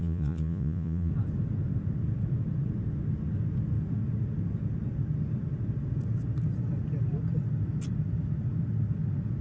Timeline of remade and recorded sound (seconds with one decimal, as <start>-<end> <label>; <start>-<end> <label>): 0.0-1.1 remade; 1.1-9.4 recorded